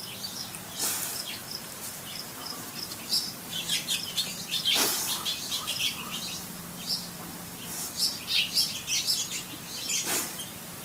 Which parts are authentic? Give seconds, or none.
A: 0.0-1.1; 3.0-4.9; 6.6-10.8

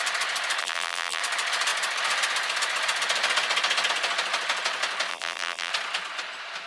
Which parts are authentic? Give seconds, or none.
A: 0.0-0.6; 1.2-5.1; 5.7-6.7

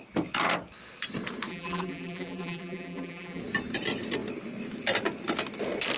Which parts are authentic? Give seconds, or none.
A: 0.0-1.5; 3.4-6.0

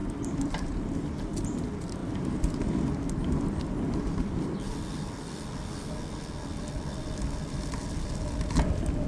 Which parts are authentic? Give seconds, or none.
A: 1.2-9.1

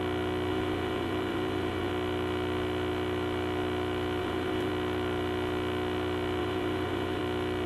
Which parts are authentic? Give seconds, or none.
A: 0.0-0.5; 1.9-4.2; 4.7-6.4; 7.2-7.7